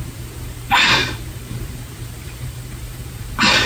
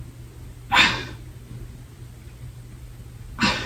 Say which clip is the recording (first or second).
second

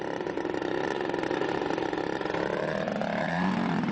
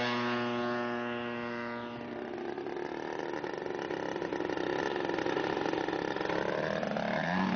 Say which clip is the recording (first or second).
second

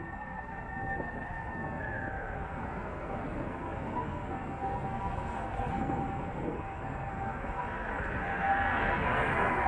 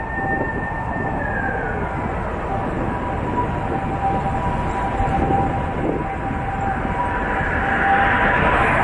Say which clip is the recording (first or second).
second